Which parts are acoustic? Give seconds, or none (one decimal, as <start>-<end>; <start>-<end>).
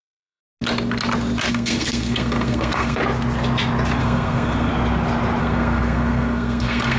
0.4-1.5; 3.0-4.0; 4.7-5.4